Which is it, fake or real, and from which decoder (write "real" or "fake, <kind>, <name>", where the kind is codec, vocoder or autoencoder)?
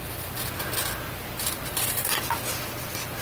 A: fake, vocoder, BigVGAN v2